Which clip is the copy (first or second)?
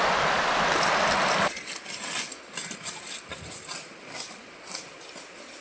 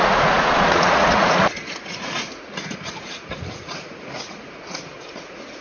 second